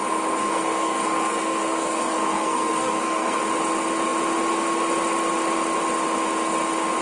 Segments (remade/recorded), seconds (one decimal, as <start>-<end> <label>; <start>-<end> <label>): 0.0-0.4 recorded; 0.4-3.4 remade; 3.4-7.0 recorded